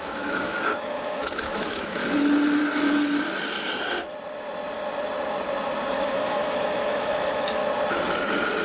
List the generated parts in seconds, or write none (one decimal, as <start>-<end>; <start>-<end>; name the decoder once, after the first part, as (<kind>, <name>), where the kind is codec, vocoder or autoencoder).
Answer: 0.0-2.0 (autoencoder, DAC-VAE); 5.9-7.6